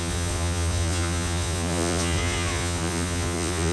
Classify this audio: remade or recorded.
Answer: remade